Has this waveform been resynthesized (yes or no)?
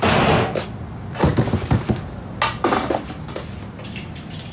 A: no